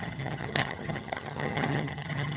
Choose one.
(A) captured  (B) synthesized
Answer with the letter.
B